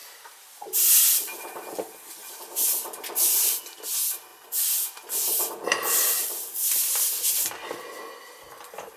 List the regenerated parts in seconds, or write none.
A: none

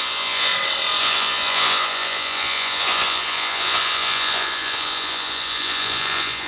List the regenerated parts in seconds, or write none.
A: 0.0-0.5 (vocoder, Vocos); 1.0-6.5

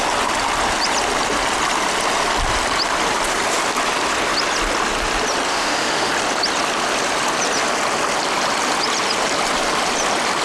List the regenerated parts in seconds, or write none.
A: 5.5-6.1 (autoencoder, DAC-VAE)

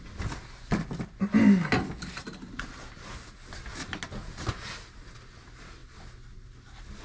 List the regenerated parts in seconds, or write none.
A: none

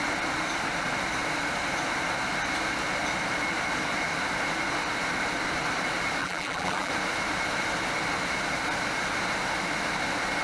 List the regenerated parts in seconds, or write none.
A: 6.2-6.9 (vocoder, BigVGAN v2)

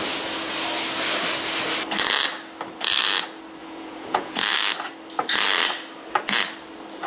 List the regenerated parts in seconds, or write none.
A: 3.6-4.4 (vocoder, Vocos)